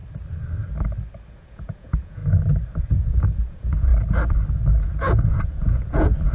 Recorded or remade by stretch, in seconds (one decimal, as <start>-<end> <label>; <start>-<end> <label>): 0.0-1.3 recorded; 1.3-2.2 remade; 2.2-2.9 recorded; 2.9-3.9 remade; 3.9-4.8 recorded; 4.8-6.3 remade